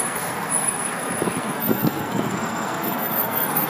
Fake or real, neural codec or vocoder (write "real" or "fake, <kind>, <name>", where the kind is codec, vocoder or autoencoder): fake, codec, SNAC